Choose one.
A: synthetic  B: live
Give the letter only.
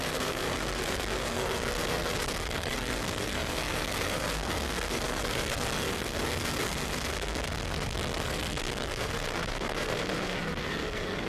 A